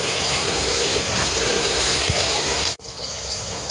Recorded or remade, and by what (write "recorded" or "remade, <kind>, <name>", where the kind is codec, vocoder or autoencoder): remade, codec, SNAC